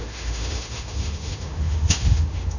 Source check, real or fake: fake